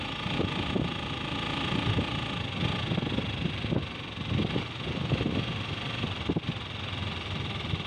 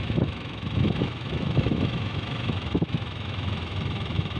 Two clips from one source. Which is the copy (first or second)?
second